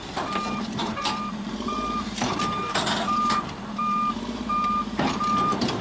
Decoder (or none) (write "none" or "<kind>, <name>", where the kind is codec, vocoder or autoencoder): vocoder, BigVGAN v2